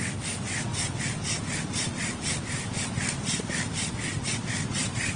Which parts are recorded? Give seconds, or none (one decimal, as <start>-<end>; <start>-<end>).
0.0-5.2